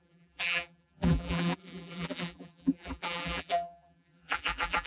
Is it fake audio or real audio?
fake